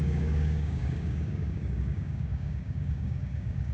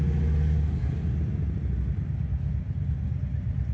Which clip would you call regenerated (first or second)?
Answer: first